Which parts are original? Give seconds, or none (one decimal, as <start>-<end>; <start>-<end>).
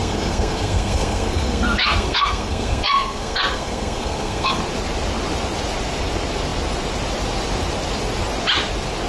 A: 4.6-9.1